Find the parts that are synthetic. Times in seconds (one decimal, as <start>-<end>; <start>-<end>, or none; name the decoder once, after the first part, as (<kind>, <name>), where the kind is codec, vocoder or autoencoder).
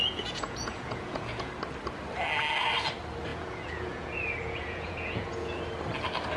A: 0.0-1.5 (vocoder, Vocos); 3.3-5.6